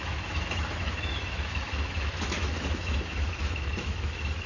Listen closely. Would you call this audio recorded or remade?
remade